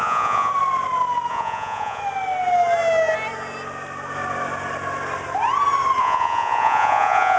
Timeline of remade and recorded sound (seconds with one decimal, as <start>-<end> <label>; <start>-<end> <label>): 0.0-0.5 remade; 0.5-1.3 recorded; 1.3-2.0 remade; 2.0-6.0 recorded; 6.0-7.4 remade